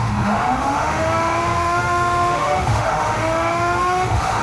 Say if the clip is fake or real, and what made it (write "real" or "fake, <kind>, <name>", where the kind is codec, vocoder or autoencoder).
fake, autoencoder, DAC-VAE